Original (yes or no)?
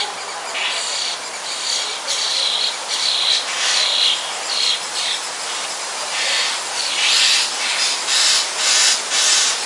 yes